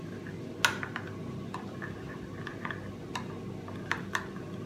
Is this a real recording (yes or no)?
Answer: yes